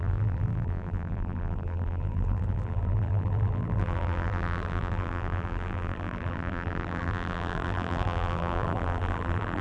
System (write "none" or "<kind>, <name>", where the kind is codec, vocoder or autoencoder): vocoder, BigVGAN v2